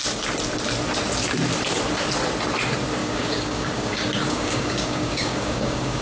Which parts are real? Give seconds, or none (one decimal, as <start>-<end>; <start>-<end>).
0.0-3.0